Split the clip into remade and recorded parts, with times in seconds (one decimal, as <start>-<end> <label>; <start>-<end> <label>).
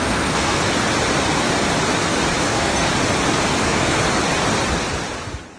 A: 0.0-0.6 remade; 0.6-2.4 recorded; 2.4-2.9 remade; 2.9-3.6 recorded; 3.6-4.0 remade; 4.0-5.6 recorded